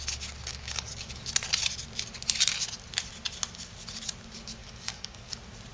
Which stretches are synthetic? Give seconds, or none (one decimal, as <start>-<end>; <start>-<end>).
0.5-1.3; 4.6-5.3